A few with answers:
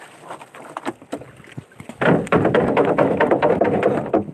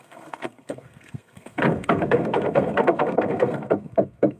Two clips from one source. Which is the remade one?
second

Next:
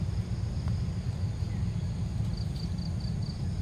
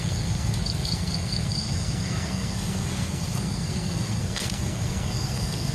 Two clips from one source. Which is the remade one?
second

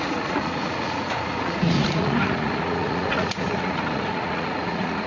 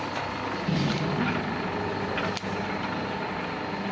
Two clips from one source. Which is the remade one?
first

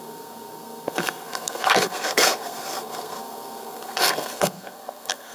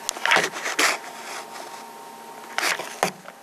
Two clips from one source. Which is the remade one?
first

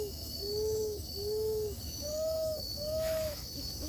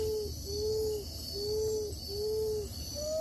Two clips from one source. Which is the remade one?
first